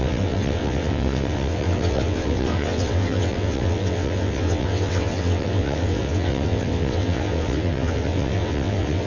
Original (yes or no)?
no